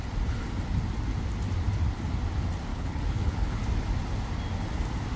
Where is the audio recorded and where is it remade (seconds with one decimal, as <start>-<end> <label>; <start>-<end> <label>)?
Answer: 0.0-2.7 recorded; 2.7-3.6 remade; 3.6-5.2 recorded